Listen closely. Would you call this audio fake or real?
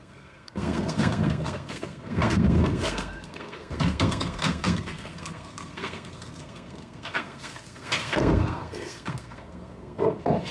fake